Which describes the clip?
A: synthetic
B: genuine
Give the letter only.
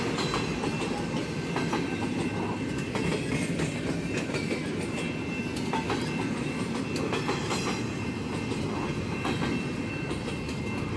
B